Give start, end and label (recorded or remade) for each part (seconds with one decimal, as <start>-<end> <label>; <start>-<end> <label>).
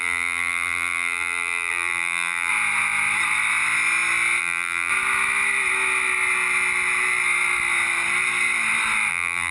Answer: 0.0-2.5 remade; 2.5-4.4 recorded; 4.4-4.9 remade; 4.9-9.1 recorded; 9.1-9.5 remade